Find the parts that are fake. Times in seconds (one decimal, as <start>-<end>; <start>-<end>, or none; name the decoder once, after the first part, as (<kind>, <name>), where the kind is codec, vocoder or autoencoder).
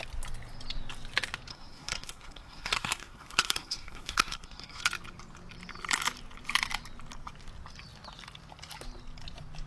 1.5-4.8 (codec, SNAC)